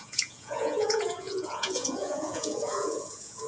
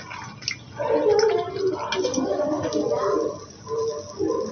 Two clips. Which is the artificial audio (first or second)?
first